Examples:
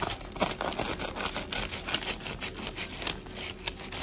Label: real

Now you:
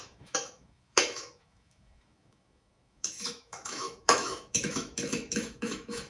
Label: fake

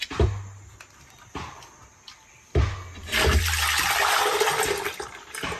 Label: real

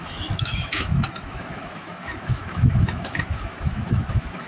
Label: fake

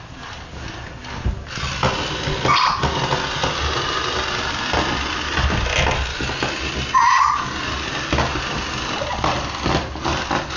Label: real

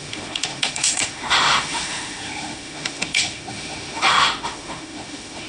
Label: fake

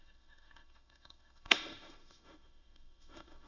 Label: fake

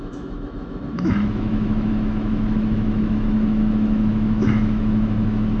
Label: fake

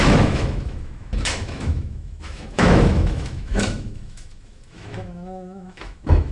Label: fake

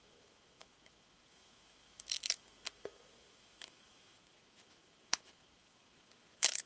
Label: fake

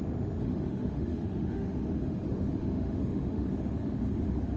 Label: fake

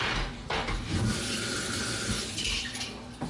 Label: real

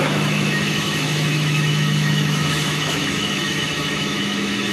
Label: fake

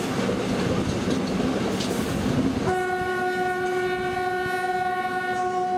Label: real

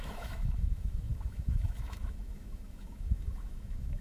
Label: fake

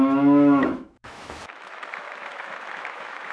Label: fake